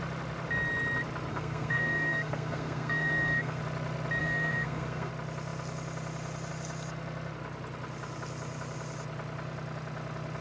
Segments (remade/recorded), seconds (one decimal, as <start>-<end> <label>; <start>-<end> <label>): 0.0-1.3 recorded; 1.3-3.6 remade; 3.6-4.2 recorded; 4.2-5.1 remade; 5.1-10.4 recorded